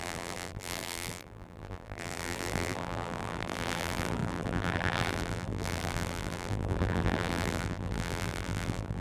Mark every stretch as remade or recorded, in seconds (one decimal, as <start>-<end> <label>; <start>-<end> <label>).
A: 0.0-9.0 remade